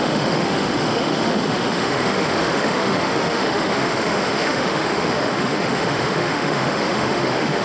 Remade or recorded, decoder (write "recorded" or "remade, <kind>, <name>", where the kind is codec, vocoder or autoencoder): remade, autoencoder, DAC-VAE